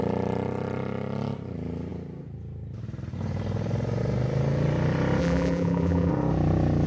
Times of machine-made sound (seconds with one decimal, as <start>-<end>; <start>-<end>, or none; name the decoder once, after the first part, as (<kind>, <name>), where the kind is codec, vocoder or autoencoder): 5.2-6.1 (vocoder, BigVGAN v2)